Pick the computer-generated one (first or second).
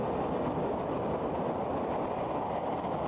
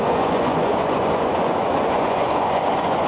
second